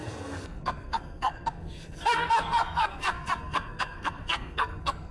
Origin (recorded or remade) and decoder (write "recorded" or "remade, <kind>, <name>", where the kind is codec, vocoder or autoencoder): remade, codec, SNAC